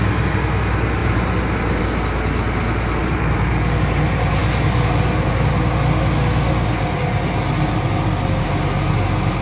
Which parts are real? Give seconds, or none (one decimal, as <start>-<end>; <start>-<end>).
0.0-1.0; 1.8-3.0; 3.5-9.4